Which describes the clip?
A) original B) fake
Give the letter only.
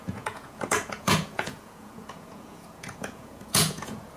B